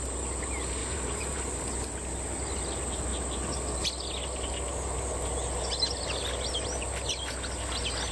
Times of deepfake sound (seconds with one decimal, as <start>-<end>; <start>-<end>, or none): 0.8-1.4